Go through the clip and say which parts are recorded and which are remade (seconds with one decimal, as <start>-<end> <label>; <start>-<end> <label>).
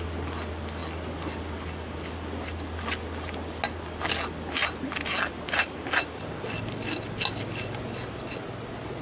0.0-9.0 recorded